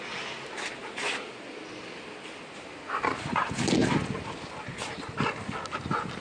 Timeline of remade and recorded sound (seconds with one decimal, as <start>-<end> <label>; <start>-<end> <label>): 0.0-6.2 recorded